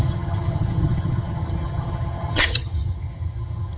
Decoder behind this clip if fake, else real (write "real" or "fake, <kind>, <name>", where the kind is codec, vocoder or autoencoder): fake, vocoder, HiFi-GAN